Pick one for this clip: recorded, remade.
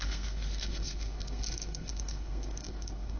remade